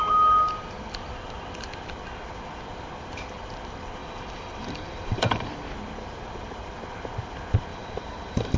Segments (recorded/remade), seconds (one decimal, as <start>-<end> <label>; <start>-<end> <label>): 0.0-4.0 recorded; 4.0-5.5 remade; 5.5-7.7 recorded; 7.7-8.6 remade